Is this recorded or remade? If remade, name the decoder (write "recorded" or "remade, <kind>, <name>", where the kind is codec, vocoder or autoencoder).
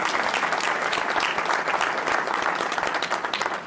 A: recorded